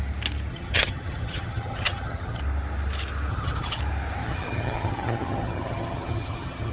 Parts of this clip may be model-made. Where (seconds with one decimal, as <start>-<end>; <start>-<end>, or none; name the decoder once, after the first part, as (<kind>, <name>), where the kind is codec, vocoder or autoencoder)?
0.5-2.4 (vocoder, HiFi-GAN); 3.3-3.8; 4.2-6.7